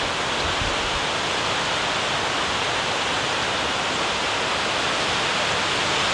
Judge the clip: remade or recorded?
recorded